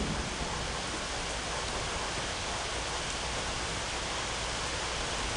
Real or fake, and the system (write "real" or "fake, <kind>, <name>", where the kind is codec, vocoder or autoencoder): real